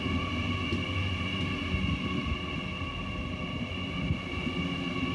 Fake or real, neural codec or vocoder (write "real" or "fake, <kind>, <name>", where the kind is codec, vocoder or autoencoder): real